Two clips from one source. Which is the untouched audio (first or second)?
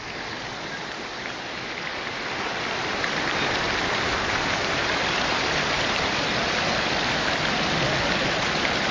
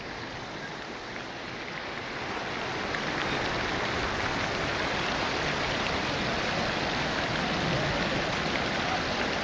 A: second